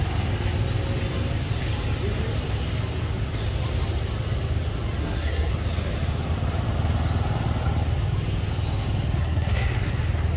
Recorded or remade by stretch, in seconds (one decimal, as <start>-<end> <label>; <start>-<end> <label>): 0.0-5.0 recorded; 5.0-5.5 remade; 5.5-9.2 recorded; 9.2-9.9 remade; 9.9-10.4 recorded